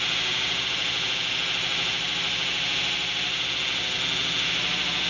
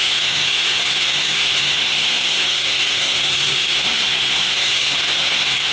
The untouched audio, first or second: first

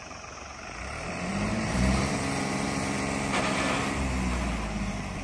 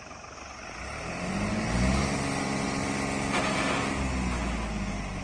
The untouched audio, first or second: second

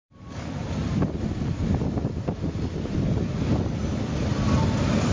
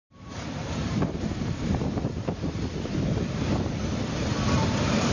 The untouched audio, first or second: first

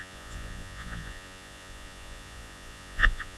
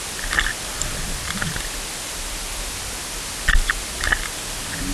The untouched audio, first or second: second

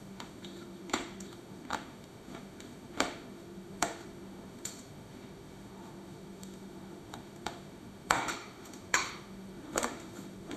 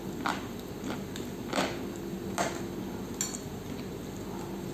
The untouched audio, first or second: second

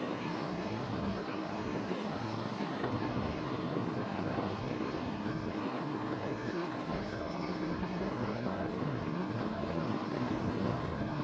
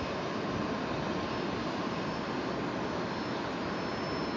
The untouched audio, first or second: second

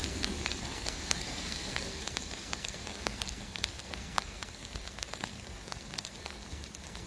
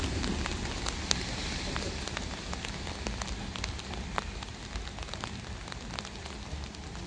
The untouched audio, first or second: second